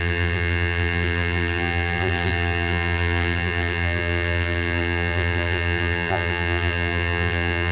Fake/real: fake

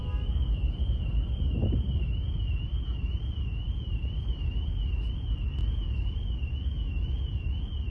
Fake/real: real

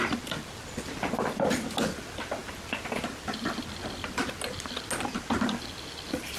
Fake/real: real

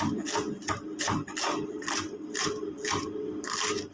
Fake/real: real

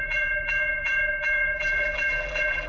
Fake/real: fake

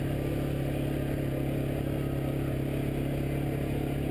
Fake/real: real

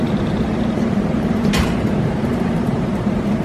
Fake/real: fake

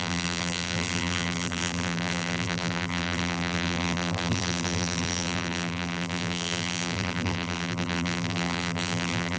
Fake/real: fake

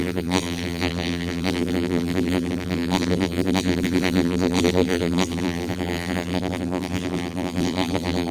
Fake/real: fake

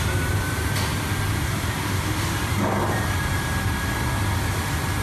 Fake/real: real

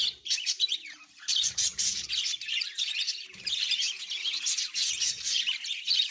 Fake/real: fake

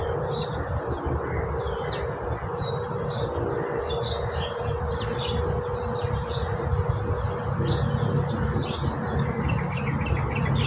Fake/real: real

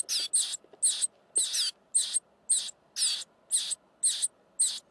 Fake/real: real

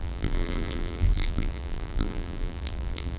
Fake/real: fake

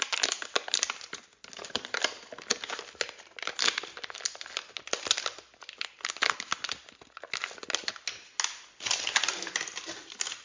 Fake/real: real